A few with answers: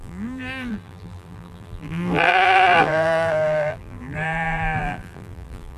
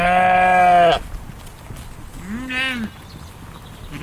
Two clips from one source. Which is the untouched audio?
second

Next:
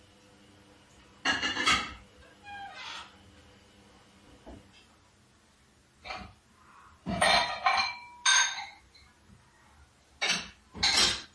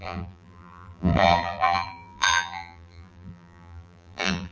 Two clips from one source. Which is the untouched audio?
first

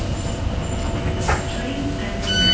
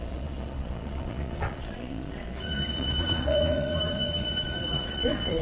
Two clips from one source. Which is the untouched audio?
first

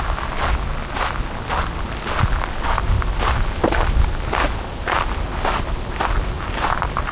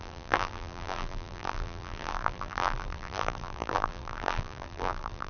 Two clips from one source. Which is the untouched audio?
first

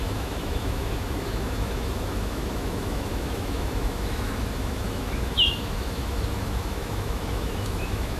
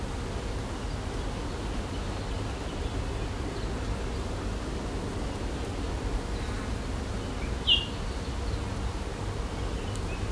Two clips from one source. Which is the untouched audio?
second